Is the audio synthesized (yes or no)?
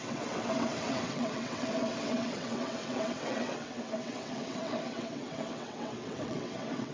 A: yes